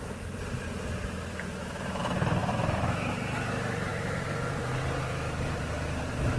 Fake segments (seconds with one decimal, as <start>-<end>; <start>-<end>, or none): 1.3-2.0; 2.4-3.1; 3.9-4.7